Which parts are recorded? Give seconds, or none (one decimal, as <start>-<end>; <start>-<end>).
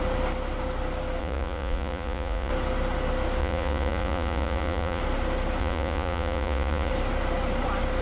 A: 0.0-1.2; 2.5-3.4; 5.0-5.6; 6.9-8.0